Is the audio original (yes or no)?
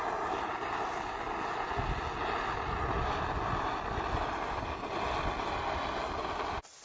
yes